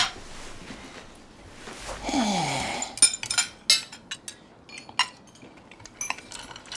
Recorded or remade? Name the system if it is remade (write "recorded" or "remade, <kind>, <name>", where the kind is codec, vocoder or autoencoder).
recorded